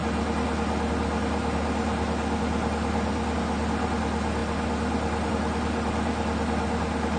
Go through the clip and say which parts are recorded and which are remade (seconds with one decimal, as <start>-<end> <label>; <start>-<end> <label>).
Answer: 0.0-7.2 recorded